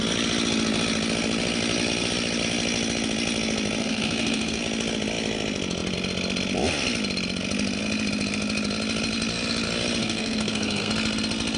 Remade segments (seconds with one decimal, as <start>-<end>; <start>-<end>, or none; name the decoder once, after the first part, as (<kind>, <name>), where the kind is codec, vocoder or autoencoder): 3.8-4.6 (codec, SNAC); 10.0-10.9